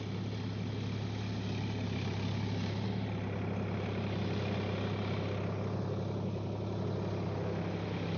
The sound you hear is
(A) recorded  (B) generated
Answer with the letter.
A